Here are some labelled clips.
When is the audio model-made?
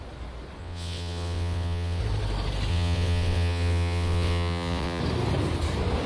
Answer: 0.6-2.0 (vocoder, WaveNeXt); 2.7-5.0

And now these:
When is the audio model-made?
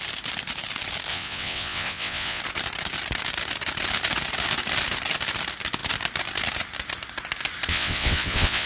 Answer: 1.1-2.4 (vocoder, WaveNeXt); 7.7-8.7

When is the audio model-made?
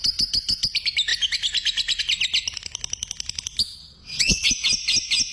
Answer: 3.8-4.5 (vocoder, WaveNeXt)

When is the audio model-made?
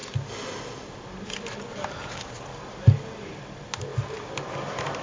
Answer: none